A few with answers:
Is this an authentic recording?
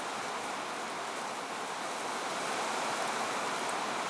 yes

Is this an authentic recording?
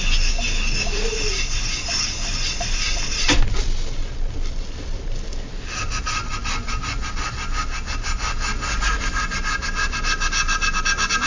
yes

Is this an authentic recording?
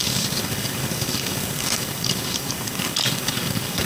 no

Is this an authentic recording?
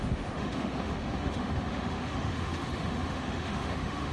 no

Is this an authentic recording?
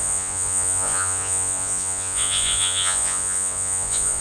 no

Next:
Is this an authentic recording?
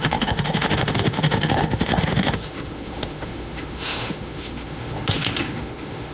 no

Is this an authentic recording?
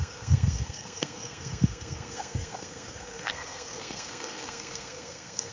no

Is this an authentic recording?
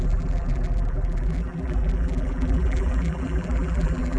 no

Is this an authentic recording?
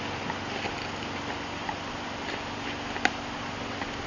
yes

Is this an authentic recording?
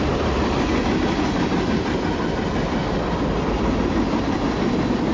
yes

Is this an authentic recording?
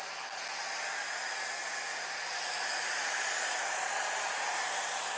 yes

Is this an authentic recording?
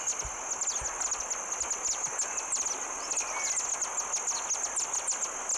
yes